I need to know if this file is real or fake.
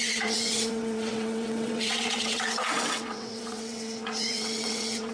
fake